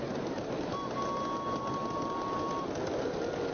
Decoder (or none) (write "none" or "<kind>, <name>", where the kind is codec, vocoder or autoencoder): none